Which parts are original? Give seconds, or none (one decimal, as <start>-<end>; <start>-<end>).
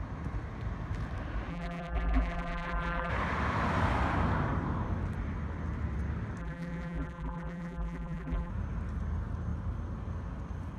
0.0-1.5; 3.1-6.4; 8.5-10.8